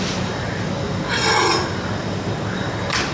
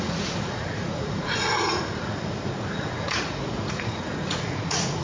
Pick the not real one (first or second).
second